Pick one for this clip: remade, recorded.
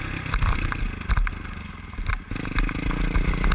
recorded